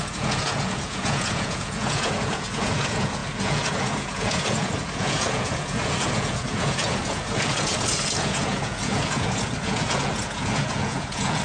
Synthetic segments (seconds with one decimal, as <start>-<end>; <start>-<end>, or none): 0.0-11.4